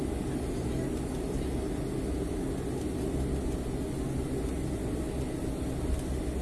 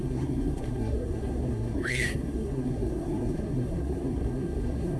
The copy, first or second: second